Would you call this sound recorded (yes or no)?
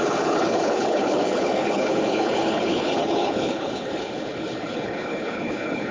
no